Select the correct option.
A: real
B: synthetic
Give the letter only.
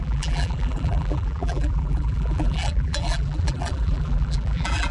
B